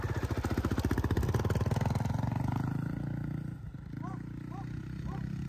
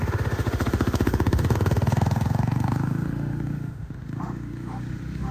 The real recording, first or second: first